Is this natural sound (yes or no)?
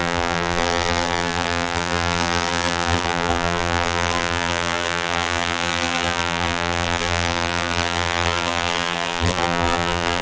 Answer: no